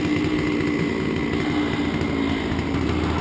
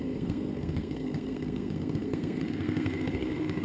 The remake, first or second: second